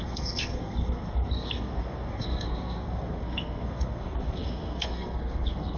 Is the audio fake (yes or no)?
yes